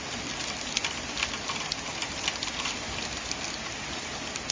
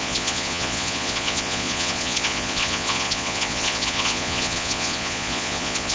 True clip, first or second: first